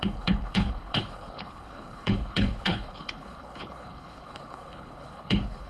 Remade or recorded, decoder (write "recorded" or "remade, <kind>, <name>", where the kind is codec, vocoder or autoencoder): remade, codec, HILCodec